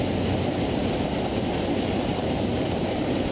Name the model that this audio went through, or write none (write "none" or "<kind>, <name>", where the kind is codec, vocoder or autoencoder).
none